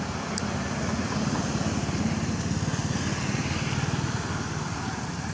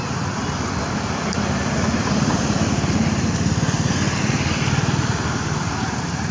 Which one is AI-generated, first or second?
second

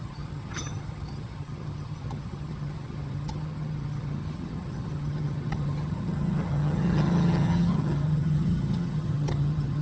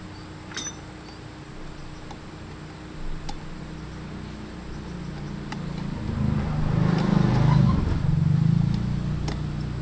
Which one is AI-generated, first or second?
first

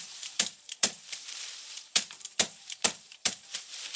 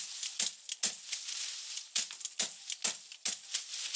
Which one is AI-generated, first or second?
first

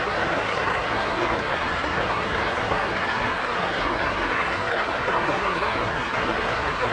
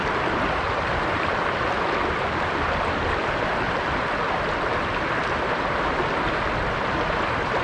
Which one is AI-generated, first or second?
first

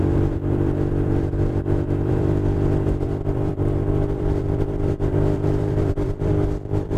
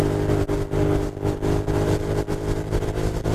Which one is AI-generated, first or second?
first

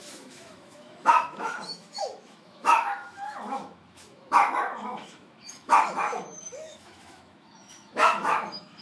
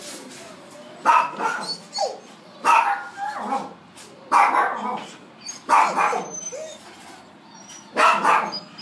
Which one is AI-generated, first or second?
first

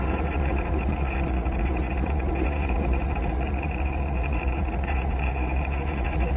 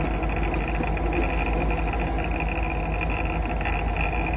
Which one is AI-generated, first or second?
first